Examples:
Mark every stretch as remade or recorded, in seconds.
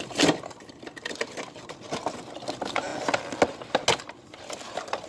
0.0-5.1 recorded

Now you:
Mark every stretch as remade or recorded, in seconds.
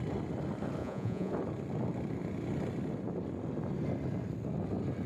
0.0-0.8 recorded; 0.8-1.3 remade; 1.3-5.1 recorded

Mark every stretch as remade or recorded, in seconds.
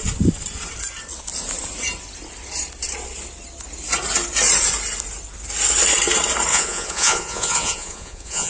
0.0-6.5 recorded; 6.5-8.5 remade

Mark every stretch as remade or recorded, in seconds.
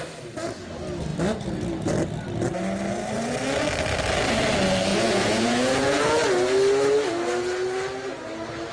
0.0-4.9 recorded; 4.9-6.0 remade; 6.0-8.7 recorded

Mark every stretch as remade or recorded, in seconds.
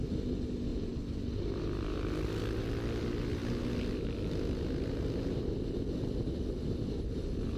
0.0-7.6 recorded